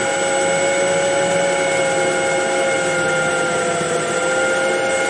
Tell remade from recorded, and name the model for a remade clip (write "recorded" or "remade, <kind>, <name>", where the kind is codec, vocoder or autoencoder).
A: recorded